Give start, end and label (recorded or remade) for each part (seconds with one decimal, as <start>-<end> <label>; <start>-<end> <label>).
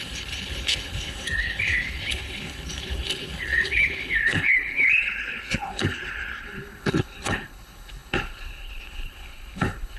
0.0-10.0 remade